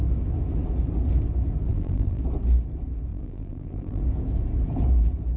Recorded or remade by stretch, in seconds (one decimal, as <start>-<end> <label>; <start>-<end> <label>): 0.0-1.7 recorded; 1.7-2.2 remade; 2.2-3.1 recorded; 3.1-4.0 remade; 4.0-5.4 recorded